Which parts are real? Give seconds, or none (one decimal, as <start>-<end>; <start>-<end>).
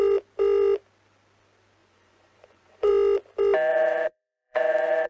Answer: 0.0-1.8; 2.9-3.7